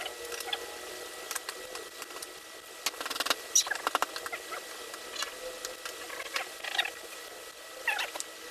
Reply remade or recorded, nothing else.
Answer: recorded